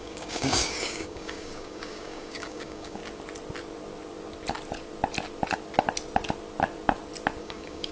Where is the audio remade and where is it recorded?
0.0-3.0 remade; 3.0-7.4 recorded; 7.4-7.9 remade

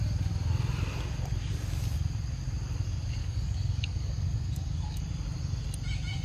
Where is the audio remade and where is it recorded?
0.0-3.2 recorded; 3.2-5.0 remade; 5.0-6.2 recorded

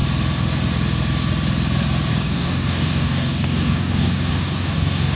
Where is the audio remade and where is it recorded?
0.0-2.1 recorded; 2.1-5.2 remade

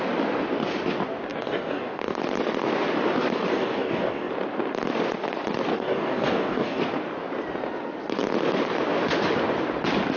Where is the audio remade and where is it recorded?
0.0-1.3 recorded; 1.3-2.2 remade; 2.2-3.5 recorded; 3.5-4.3 remade; 4.3-5.7 recorded; 5.7-6.8 remade; 6.8-10.2 recorded

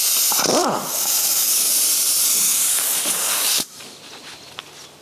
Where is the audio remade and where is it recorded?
0.0-0.6 recorded; 0.6-1.7 remade; 1.7-2.5 recorded; 2.5-4.0 remade; 4.0-5.0 recorded

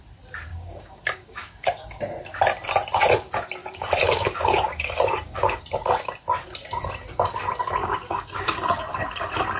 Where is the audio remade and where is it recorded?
0.0-0.5 recorded; 0.5-2.0 remade; 2.0-3.6 recorded; 3.6-5.6 remade; 5.6-7.8 recorded; 7.8-8.8 remade; 8.8-9.6 recorded

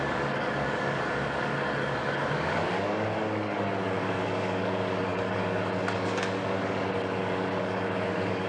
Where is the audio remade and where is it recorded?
0.0-8.5 remade